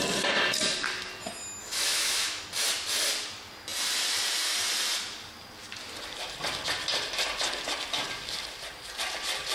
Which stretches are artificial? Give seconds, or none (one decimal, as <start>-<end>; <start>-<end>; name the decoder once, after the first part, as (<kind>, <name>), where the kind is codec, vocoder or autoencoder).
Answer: 1.6-2.4 (autoencoder, DAC-VAE)